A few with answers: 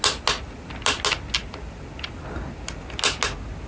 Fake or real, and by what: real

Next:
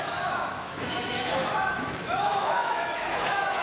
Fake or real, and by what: fake, autoencoder, DAC-VAE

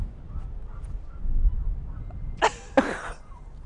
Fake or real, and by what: real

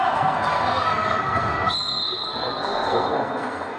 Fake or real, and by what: fake, codec, SNAC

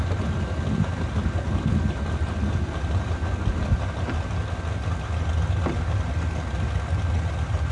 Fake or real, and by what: real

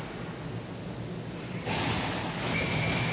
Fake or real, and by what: real